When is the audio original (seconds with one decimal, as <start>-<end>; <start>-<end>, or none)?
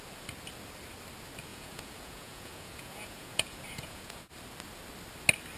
0.0-1.5; 4.3-5.6